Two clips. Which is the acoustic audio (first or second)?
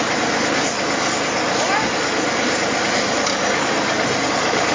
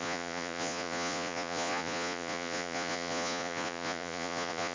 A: first